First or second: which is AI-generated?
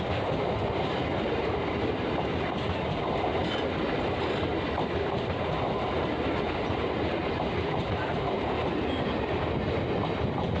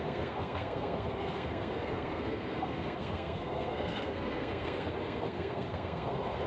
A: second